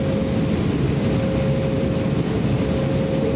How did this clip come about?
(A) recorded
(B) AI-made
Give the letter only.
A